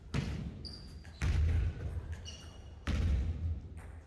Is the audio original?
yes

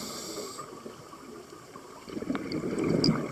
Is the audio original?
yes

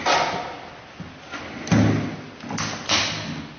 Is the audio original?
yes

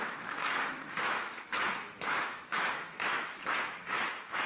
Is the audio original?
no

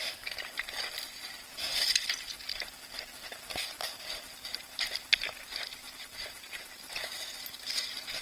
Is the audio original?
yes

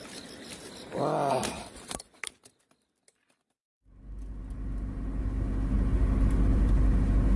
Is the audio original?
yes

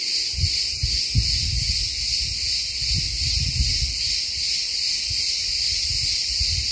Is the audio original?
yes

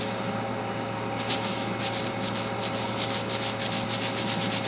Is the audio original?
yes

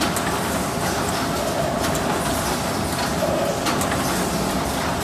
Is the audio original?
yes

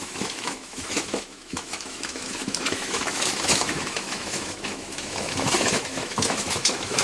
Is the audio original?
no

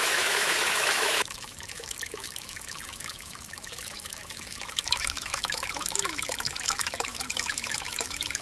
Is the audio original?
no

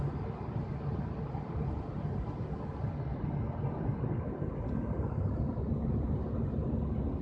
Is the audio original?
yes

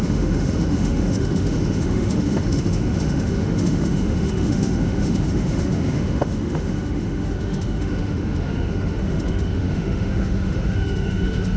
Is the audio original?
no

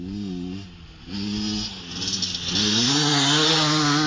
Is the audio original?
yes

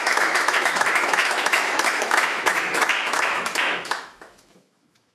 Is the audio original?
no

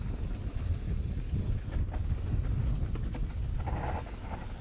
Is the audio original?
yes